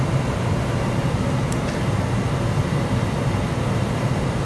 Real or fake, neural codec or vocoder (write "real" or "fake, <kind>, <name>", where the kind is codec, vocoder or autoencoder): real